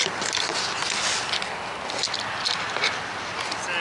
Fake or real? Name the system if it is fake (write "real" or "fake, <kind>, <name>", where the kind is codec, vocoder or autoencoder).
real